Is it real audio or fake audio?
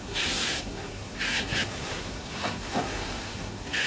fake